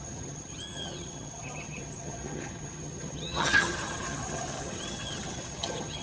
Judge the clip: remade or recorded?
remade